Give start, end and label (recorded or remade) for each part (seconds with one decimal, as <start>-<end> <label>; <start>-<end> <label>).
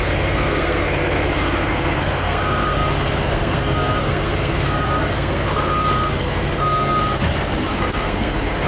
0.0-7.0 remade; 7.0-7.7 recorded; 7.7-8.7 remade